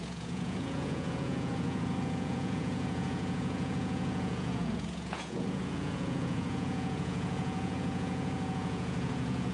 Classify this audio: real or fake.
fake